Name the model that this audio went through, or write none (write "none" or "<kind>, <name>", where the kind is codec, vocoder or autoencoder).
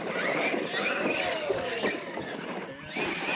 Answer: none